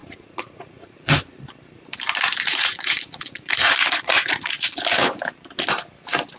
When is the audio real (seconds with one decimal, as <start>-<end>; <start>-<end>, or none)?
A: 1.2-2.5; 4.8-6.4